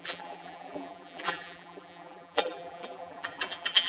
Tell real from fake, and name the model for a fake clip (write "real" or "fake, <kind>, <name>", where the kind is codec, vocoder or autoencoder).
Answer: fake, vocoder, BigVGAN v2